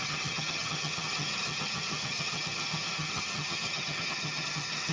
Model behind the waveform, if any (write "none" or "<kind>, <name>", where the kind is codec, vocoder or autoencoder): vocoder, HiFi-GAN